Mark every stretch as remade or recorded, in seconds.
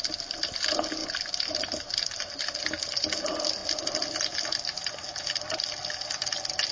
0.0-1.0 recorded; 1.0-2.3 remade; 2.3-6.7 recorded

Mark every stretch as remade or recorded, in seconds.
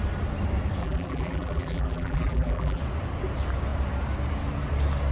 0.0-0.8 recorded; 0.8-2.8 remade; 2.8-5.1 recorded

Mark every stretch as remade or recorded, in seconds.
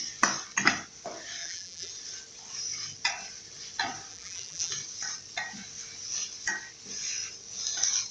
0.0-1.4 recorded; 1.4-1.9 remade; 1.9-4.1 recorded; 4.1-4.7 remade; 4.7-8.1 recorded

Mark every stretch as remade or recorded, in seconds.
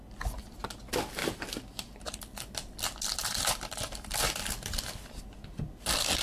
0.0-1.2 recorded; 1.2-2.2 remade; 2.2-3.2 recorded; 3.2-4.1 remade; 4.1-6.2 recorded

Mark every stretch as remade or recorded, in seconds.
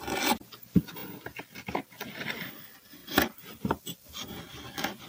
0.0-5.1 recorded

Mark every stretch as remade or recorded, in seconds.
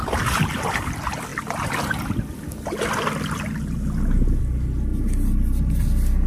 0.0-6.3 recorded